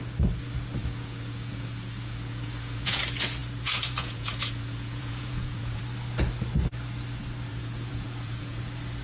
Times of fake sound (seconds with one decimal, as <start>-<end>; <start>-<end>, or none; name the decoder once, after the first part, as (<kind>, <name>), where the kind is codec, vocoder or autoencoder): 0.8-3.0 (vocoder, Vocos); 3.4-5.8; 7.5-8.6